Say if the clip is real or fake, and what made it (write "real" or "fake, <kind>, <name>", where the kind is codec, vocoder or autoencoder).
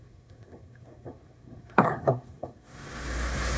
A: fake, codec, SNAC